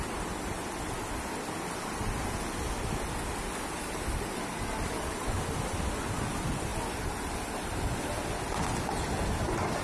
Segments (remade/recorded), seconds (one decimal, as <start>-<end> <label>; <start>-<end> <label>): 0.0-9.8 recorded